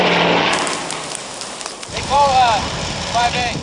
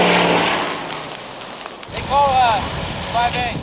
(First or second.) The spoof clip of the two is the first